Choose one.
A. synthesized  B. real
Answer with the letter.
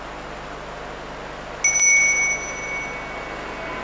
B